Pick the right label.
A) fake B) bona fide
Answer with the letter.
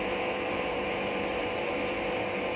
A